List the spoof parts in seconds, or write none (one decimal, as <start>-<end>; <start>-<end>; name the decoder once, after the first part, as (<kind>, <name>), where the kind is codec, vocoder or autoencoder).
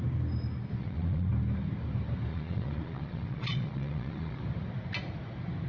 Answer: 0.8-1.3 (vocoder, Vocos); 2.3-4.4